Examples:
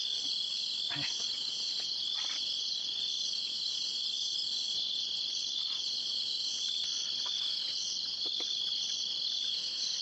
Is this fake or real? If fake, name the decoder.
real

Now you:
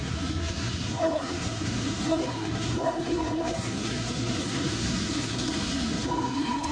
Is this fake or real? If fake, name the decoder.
fake, codec, SNAC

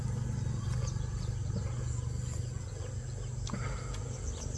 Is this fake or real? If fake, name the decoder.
real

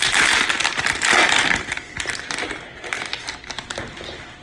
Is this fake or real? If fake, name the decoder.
real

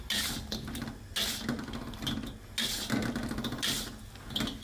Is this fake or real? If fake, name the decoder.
real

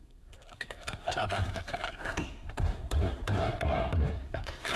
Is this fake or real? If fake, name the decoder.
fake, codec, SNAC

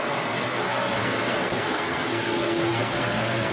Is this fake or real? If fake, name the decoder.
fake, codec, SNAC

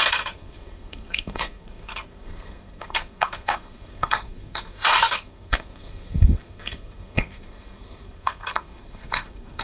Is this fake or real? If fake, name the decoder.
fake, codec, SNAC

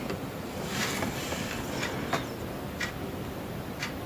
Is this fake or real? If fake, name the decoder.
real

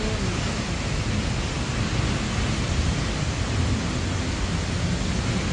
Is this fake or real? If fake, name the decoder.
real